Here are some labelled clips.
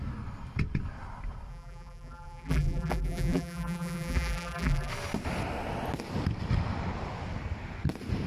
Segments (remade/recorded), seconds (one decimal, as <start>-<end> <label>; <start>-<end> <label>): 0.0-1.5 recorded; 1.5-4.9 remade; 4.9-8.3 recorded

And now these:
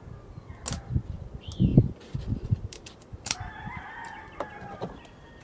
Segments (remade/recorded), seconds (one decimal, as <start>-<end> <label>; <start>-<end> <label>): 0.0-1.7 recorded; 1.7-4.9 remade; 4.9-5.4 recorded

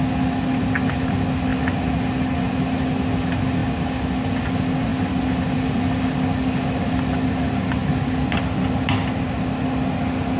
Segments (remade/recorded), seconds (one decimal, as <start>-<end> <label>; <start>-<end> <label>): 0.0-1.5 recorded; 1.5-2.2 remade; 2.2-3.6 recorded; 3.6-4.4 remade; 4.4-10.4 recorded

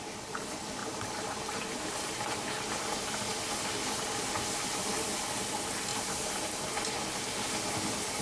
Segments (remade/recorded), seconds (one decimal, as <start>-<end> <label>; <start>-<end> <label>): 0.0-0.8 recorded; 0.8-2.8 remade; 2.8-5.9 recorded; 5.9-6.7 remade; 6.7-8.2 recorded